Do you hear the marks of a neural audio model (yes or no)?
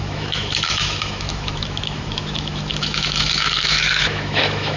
yes